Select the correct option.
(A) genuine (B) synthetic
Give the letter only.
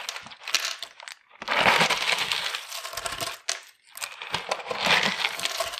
A